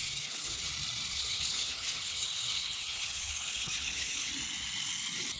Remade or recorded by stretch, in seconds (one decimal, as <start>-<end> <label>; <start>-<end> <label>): 0.0-0.7 remade; 0.7-1.1 recorded; 1.1-4.3 remade; 4.3-5.4 recorded